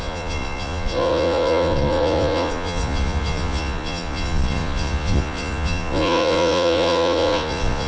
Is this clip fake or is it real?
fake